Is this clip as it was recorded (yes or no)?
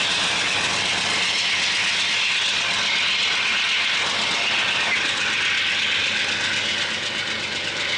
yes